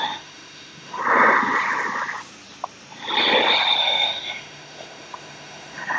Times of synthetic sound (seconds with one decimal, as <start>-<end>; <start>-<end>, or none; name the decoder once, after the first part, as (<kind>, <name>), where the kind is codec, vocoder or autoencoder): 0.0-1.0 (autoencoder, DAC-VAE); 3.8-6.0